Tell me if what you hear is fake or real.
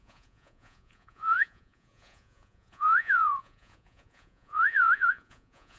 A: fake